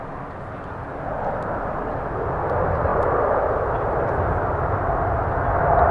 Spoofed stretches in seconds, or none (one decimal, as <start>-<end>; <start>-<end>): none